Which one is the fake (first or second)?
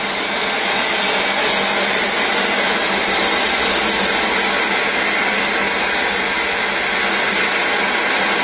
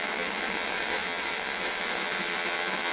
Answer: second